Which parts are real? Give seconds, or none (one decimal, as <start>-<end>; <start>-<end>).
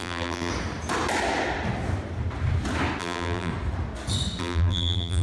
0.5-3.0; 3.5-4.4